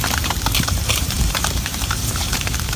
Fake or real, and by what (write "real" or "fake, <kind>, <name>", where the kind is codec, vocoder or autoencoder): fake, vocoder, BigVGAN v2